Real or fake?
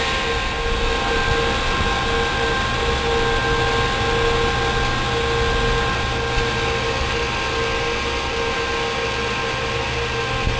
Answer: real